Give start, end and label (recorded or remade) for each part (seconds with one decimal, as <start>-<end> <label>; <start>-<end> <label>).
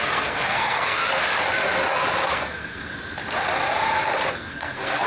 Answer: 0.0-1.0 remade; 1.0-2.3 recorded; 2.3-2.9 remade; 2.9-4.3 recorded; 4.3-5.1 remade